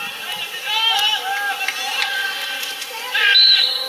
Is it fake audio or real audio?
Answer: real